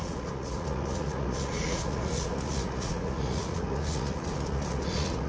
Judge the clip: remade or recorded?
remade